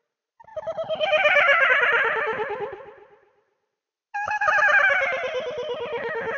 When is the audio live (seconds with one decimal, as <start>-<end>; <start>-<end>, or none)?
0.0-6.4